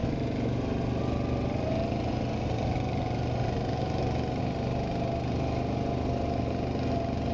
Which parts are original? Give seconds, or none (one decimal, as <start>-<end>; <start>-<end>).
0.0-7.3